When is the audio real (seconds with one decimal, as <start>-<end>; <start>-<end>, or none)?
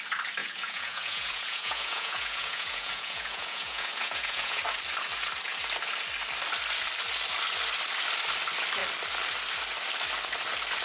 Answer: 0.0-0.4; 4.6-10.8